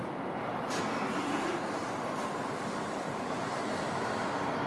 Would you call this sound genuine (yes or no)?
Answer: yes